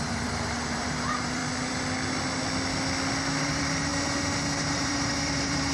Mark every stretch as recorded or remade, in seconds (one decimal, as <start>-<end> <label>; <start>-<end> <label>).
0.0-1.4 remade; 1.4-3.4 recorded; 3.4-3.9 remade; 3.9-4.7 recorded; 4.7-5.7 remade